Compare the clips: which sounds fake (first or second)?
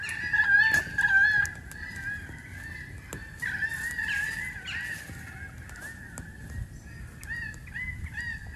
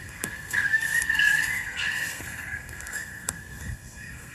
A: second